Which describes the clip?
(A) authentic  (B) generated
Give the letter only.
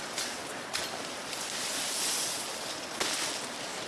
A